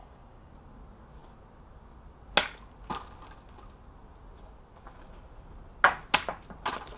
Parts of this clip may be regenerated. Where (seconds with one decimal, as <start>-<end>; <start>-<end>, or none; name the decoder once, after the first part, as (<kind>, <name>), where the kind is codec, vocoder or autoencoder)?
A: 0.0-0.5 (codec, DAC)